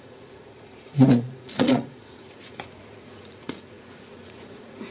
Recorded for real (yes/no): no